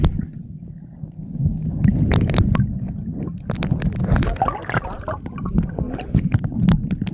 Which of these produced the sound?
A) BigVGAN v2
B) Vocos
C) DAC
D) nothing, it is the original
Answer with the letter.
D